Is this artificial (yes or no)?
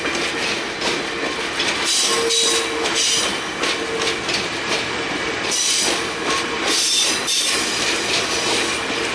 no